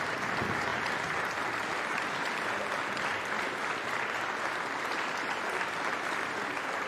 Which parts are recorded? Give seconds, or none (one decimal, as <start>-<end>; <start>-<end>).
0.0-6.9